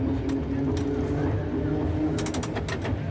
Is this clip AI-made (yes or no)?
no